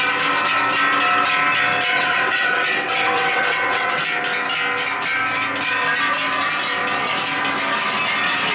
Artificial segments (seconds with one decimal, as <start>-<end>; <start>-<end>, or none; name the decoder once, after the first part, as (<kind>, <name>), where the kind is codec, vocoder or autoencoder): 1.9-4.0 (vocoder, WaveNeXt)